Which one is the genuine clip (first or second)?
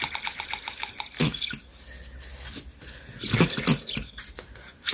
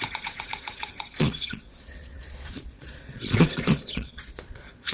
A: first